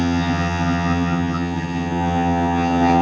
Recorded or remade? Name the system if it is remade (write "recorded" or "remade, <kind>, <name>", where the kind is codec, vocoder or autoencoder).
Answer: remade, vocoder, HiFi-GAN